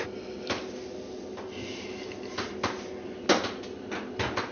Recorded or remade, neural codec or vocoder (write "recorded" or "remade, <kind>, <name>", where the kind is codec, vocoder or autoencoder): recorded